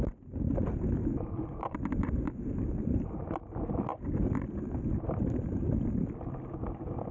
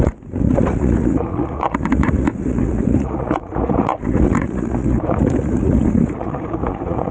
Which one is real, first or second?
first